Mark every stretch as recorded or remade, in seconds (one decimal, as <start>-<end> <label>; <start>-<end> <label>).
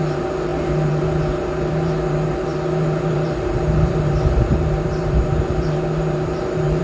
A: 0.0-6.8 remade